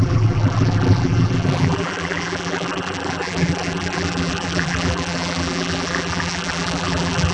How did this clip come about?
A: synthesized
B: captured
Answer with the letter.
A